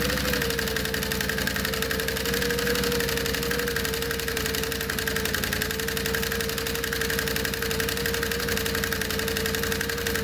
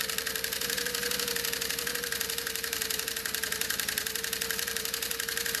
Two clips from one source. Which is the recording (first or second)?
first